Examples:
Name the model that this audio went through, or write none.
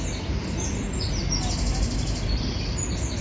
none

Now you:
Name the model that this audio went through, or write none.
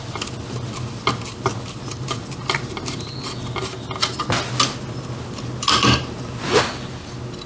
none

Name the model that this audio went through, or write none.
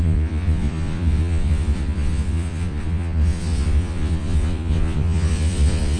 vocoder, Vocos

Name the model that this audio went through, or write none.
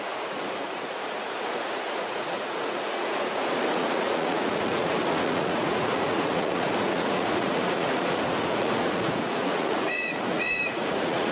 vocoder, Vocos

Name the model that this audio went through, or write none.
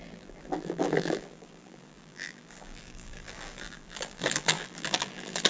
vocoder, BigVGAN v2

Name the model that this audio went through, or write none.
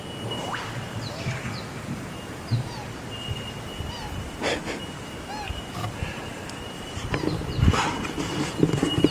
none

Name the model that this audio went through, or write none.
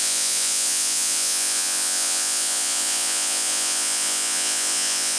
vocoder, Vocos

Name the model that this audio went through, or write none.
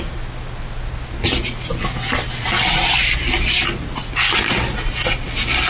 none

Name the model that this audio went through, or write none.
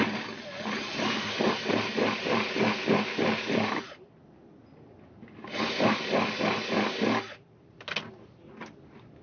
none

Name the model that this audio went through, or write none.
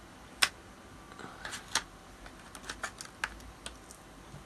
none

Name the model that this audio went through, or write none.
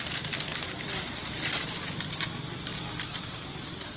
none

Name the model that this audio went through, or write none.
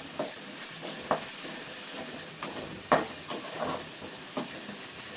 none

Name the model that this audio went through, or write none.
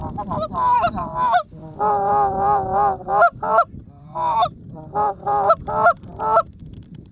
vocoder, BigVGAN v2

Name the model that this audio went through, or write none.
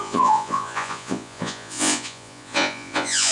vocoder, Vocos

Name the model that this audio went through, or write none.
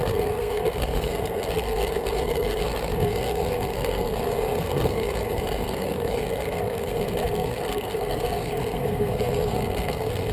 codec, SNAC